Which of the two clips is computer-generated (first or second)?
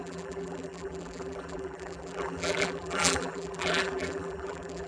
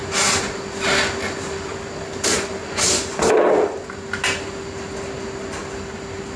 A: first